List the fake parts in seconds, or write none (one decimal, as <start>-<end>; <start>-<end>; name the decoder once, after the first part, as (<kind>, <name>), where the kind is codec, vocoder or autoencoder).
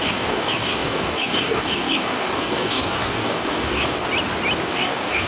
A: 0.0-4.0 (codec, DAC); 4.7-5.3